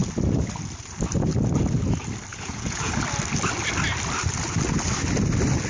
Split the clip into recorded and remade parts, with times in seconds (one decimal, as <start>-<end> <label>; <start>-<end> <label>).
0.0-2.3 recorded; 2.3-2.9 remade; 2.9-5.7 recorded